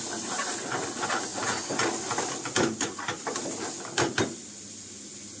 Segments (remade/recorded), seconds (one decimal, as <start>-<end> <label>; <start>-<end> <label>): 0.0-5.4 recorded